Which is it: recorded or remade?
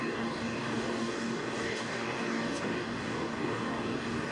remade